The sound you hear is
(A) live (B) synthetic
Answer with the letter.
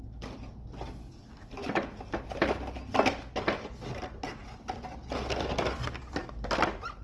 A